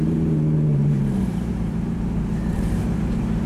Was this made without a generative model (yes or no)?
no